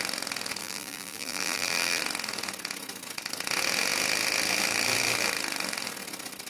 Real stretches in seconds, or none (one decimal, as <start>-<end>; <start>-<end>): 0.0-0.6; 2.0-6.5